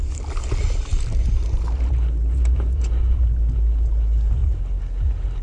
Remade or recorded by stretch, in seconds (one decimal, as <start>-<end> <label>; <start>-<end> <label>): 0.0-5.4 recorded